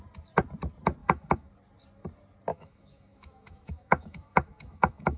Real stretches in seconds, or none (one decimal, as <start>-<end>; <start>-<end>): 0.0-1.0; 1.5-2.5